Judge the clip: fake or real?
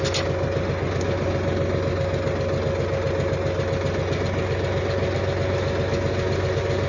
real